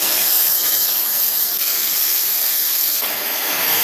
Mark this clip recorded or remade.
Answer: remade